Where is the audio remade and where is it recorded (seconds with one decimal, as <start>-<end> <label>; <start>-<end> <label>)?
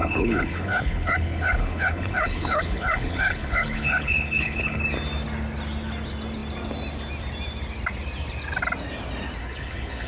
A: 0.0-4.8 remade; 4.8-9.4 recorded; 9.4-10.1 remade